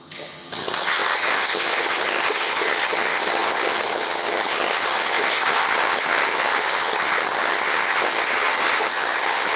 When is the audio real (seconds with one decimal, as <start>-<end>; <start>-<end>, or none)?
none